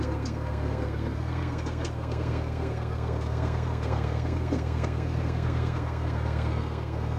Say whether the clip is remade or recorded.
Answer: remade